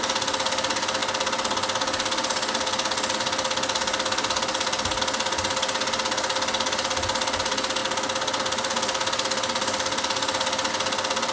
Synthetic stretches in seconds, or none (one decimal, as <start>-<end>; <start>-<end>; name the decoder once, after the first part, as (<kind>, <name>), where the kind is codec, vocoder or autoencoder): none